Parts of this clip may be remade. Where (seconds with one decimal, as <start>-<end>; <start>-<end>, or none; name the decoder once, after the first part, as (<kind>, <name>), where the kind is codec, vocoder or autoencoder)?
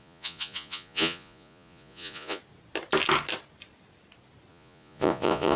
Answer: 0.0-2.4 (vocoder, Vocos); 4.5-5.6